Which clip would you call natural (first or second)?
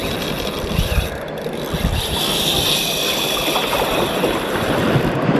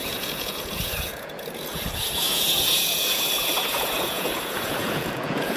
first